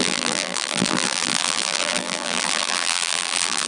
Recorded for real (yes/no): no